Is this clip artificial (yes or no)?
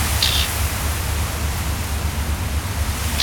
no